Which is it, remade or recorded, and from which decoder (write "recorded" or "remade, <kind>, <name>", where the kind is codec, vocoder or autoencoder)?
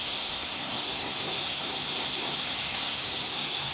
remade, codec, SNAC